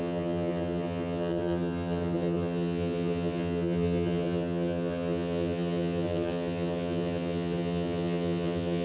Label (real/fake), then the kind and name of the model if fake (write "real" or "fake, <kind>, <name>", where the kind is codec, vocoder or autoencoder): fake, vocoder, HiFi-GAN